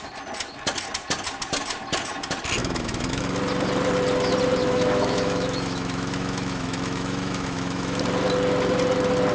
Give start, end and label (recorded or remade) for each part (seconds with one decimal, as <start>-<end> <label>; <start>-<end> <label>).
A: 0.0-2.6 recorded; 2.6-3.2 remade; 3.2-4.6 recorded; 4.6-8.0 remade; 8.0-9.3 recorded